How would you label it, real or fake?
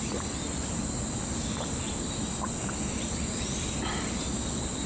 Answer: real